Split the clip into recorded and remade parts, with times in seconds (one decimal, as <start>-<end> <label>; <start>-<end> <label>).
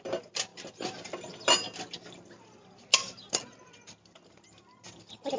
0.0-5.4 recorded